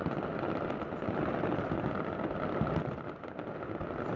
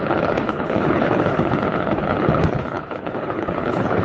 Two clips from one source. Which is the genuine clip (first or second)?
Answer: first